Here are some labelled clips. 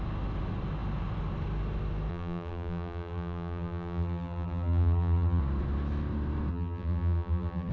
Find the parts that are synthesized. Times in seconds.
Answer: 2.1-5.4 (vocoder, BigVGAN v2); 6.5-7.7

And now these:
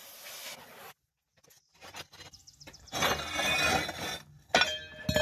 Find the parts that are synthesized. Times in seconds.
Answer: none